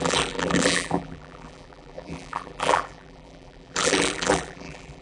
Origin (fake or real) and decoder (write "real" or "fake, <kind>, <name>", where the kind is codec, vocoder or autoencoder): fake, vocoder, BigVGAN v2